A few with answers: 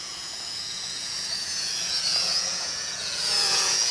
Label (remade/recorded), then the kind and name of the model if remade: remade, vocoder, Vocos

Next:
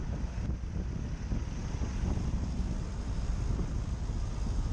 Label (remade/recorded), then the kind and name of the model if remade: recorded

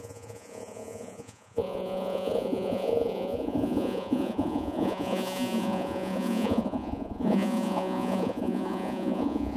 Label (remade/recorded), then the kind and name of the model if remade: remade, vocoder, Vocos